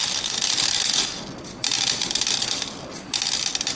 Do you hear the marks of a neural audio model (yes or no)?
no